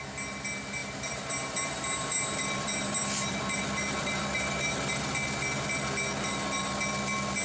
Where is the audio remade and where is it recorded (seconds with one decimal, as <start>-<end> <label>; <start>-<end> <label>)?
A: 0.0-0.8 recorded; 0.8-5.0 remade; 5.0-7.4 recorded